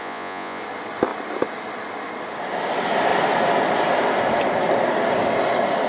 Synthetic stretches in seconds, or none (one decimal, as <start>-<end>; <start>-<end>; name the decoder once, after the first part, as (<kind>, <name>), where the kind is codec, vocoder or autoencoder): 0.0-0.6 (vocoder, Vocos)